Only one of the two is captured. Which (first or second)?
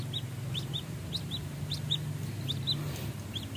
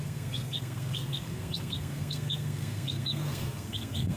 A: first